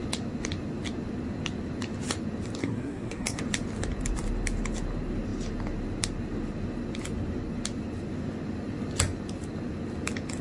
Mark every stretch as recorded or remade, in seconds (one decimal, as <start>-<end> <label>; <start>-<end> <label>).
0.0-2.6 recorded; 2.6-3.4 remade; 3.4-10.4 recorded